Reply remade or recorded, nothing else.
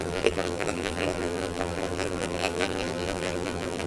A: remade